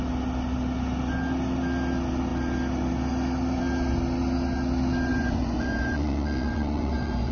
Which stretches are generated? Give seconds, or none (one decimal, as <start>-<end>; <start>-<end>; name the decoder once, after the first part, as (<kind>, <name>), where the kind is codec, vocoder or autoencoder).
5.1-7.3 (vocoder, Vocos)